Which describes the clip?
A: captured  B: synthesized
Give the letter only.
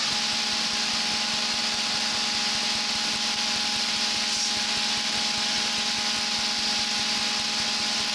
A